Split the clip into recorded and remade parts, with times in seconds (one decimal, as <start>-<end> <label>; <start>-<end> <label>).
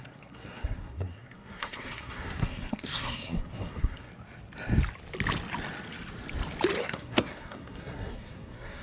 0.0-4.1 remade; 4.1-6.8 recorded; 6.8-8.8 remade